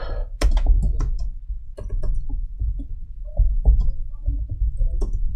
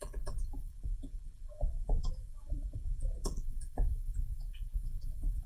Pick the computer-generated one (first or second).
second